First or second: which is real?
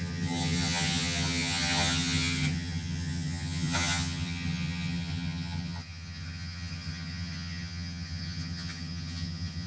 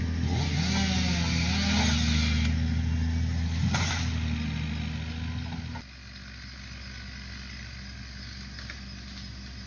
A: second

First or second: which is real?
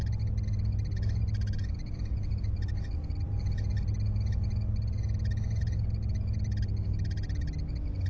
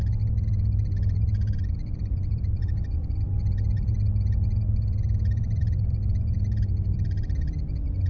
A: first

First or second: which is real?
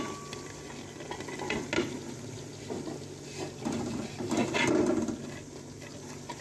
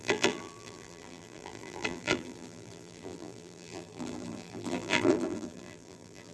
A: first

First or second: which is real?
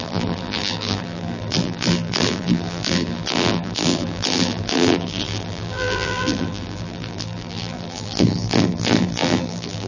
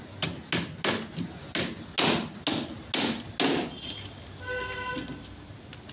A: second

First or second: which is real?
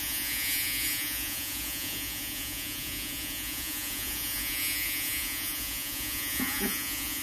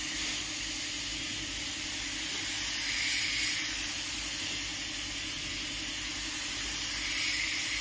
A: second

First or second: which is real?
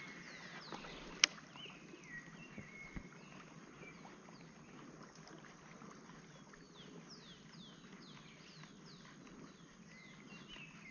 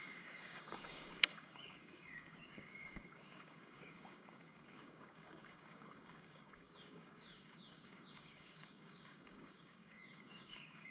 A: first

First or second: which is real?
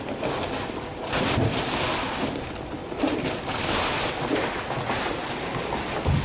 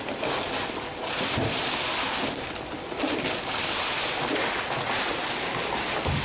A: second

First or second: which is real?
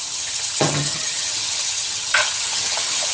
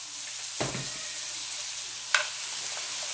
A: second